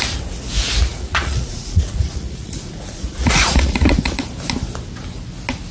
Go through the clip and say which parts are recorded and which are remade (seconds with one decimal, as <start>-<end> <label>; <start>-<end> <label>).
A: 0.0-0.9 recorded; 0.9-4.3 remade; 4.3-5.7 recorded